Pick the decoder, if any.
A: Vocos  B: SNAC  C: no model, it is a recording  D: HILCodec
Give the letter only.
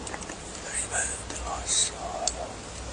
C